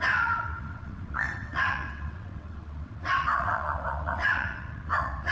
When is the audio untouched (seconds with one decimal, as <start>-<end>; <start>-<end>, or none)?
none